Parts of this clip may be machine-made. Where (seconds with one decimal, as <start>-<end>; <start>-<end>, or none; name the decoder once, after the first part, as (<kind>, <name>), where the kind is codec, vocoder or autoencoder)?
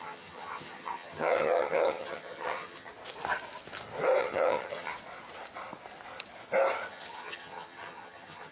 0.0-2.9 (vocoder, HiFi-GAN); 4.2-4.9; 6.9-8.5